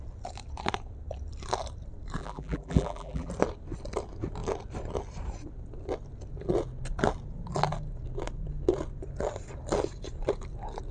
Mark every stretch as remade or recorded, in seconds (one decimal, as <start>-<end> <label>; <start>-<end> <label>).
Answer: 0.0-2.2 recorded; 2.2-3.3 remade; 3.3-10.9 recorded